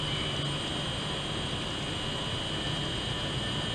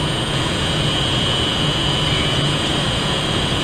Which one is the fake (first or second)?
second